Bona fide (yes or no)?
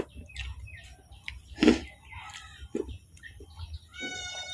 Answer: yes